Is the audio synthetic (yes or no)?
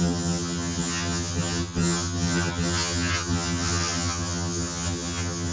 yes